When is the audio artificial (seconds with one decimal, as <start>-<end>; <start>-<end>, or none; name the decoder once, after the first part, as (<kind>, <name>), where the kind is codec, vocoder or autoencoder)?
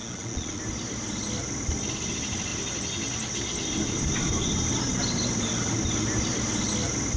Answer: 0.0-0.6 (vocoder, Vocos)